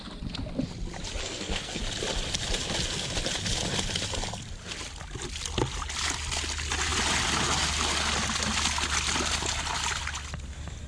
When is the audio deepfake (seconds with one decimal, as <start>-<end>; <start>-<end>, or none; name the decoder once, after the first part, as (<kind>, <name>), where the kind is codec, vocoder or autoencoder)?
1.2-1.8 (codec, SNAC)